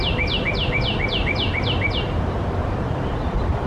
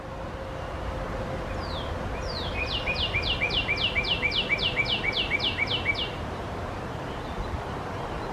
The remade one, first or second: first